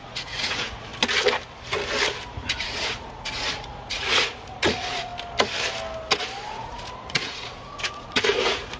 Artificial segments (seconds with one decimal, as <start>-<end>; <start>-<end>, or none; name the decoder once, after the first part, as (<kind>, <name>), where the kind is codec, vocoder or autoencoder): 0.0-0.9 (vocoder, Vocos); 2.3-5.1; 6.5-8.8